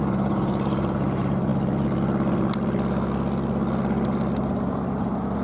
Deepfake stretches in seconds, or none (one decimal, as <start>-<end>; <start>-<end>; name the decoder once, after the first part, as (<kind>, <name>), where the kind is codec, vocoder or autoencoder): 0.0-1.5 (vocoder, BigVGAN v2); 4.7-5.4